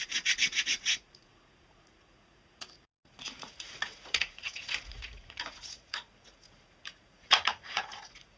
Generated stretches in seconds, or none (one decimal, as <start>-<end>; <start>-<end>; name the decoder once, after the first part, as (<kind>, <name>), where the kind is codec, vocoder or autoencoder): 0.0-8.4 (vocoder, Vocos)